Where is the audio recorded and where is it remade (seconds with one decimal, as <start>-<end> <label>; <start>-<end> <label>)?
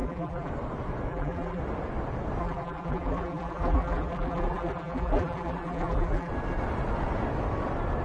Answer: 0.0-0.5 remade; 0.5-1.1 recorded; 1.1-1.6 remade; 1.6-2.4 recorded; 2.4-6.3 remade; 6.3-8.0 recorded